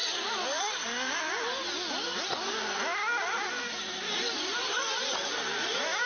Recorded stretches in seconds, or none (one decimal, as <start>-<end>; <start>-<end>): 0.0-6.1